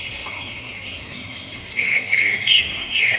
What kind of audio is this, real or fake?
fake